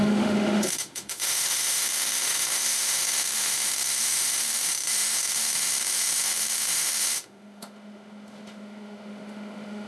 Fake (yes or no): yes